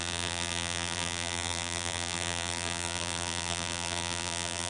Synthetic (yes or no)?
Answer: yes